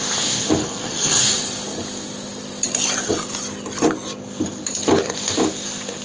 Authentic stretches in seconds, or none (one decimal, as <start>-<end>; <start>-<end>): 0.0-0.6; 1.2-6.0